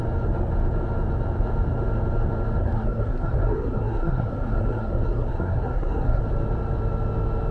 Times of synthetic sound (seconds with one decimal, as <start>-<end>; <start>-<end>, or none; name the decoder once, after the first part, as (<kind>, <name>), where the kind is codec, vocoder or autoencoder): 2.6-6.2 (codec, SNAC)